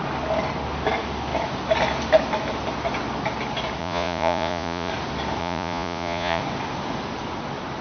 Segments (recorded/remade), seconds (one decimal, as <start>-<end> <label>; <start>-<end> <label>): 0.0-3.8 recorded; 3.8-4.9 remade; 4.9-5.4 recorded; 5.4-6.4 remade; 6.4-7.8 recorded